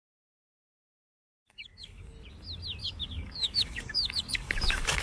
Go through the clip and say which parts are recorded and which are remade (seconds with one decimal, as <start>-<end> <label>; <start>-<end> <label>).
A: 0.0-1.3 recorded; 1.3-2.1 remade; 2.1-2.8 recorded; 2.8-5.0 remade